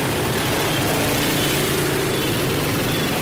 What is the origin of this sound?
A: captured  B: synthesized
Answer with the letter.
A